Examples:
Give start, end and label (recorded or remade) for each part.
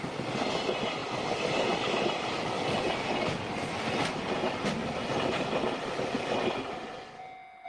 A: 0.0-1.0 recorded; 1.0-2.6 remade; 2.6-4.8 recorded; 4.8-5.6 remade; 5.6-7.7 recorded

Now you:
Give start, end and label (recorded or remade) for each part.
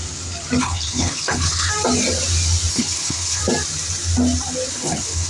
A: 0.0-0.6 recorded; 0.6-1.7 remade; 1.7-2.7 recorded; 2.7-3.4 remade; 3.4-4.7 recorded; 4.7-5.3 remade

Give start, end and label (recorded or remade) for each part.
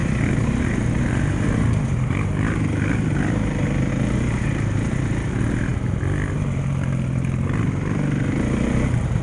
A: 0.0-3.9 remade; 3.9-9.2 recorded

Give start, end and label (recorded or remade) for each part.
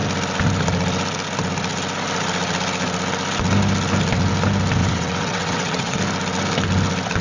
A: 0.0-4.8 recorded; 4.8-6.0 remade; 6.0-7.2 recorded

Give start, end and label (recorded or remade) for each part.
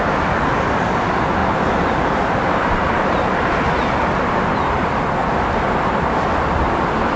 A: 0.0-1.4 recorded; 1.4-3.5 remade; 3.5-4.0 recorded; 4.0-4.8 remade; 4.8-5.2 recorded; 5.2-6.2 remade; 6.2-7.2 recorded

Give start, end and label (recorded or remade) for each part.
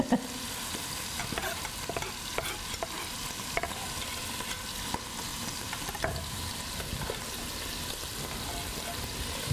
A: 0.0-5.3 recorded; 5.3-7.4 remade; 7.4-9.5 recorded